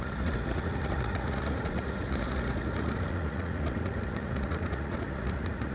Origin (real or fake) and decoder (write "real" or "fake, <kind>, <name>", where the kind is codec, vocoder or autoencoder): fake, vocoder, Vocos